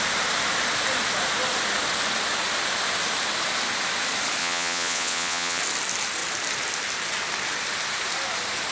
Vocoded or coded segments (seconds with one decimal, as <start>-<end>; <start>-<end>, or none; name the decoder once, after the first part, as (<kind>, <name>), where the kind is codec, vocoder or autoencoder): 4.4-5.6 (vocoder, Vocos)